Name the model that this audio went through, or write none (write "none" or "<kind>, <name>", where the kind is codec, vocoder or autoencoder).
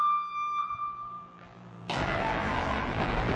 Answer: vocoder, BigVGAN v2